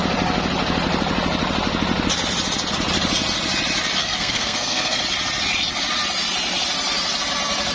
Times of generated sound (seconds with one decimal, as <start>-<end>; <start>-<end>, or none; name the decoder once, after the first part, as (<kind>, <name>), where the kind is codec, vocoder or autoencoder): 4.0-5.0 (codec, SNAC)